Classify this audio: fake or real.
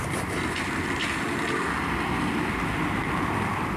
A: real